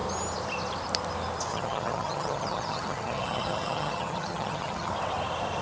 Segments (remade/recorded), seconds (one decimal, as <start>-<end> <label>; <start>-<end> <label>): 0.0-1.5 recorded; 1.5-4.9 remade; 4.9-5.6 recorded